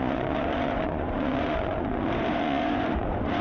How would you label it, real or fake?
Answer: fake